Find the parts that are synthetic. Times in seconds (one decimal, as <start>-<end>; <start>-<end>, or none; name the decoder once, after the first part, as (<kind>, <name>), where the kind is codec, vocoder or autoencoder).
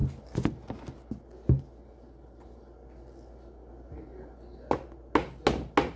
none